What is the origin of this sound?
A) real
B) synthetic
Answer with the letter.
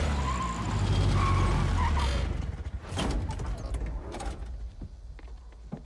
A